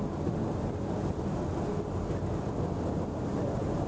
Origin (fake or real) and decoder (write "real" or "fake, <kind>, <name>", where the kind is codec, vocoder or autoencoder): real